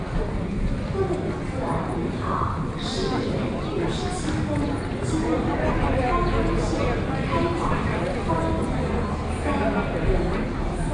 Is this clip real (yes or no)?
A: yes